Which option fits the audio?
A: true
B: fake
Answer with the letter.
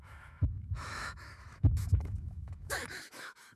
B